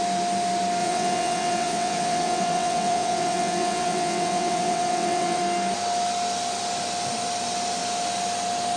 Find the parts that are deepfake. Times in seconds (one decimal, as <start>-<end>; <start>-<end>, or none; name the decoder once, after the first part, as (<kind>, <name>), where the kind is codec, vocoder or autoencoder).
0.8-5.4 (vocoder, WaveNeXt)